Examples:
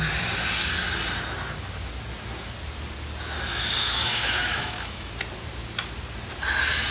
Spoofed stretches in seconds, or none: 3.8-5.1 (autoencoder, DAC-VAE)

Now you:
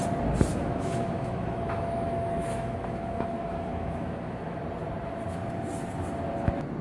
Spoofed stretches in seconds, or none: 0.5-4.6 (autoencoder, DAC-VAE)

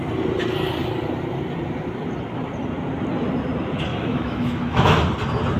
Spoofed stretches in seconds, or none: 3.9-5.0 (autoencoder, DAC-VAE)

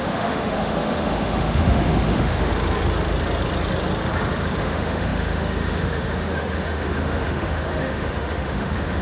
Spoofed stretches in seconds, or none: 0.0-2.5 (autoencoder, DAC-VAE); 4.6-9.0